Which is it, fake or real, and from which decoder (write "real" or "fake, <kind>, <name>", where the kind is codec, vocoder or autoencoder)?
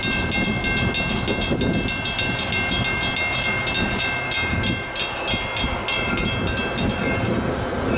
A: real